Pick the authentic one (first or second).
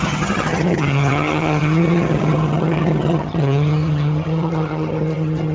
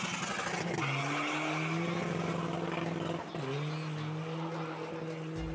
second